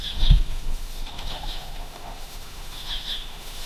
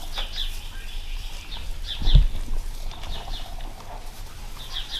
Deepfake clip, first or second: first